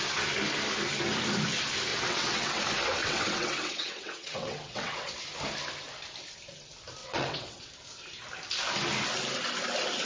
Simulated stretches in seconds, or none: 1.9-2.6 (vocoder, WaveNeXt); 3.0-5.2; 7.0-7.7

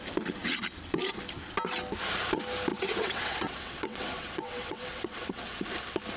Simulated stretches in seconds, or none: 2.7-5.6 (vocoder, WaveNeXt)